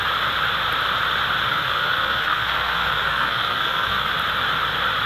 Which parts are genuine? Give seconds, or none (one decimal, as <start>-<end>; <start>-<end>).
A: 0.0-1.5; 4.1-5.1